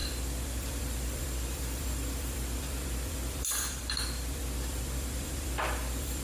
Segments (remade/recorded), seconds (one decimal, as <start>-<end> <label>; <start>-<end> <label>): 0.0-6.2 remade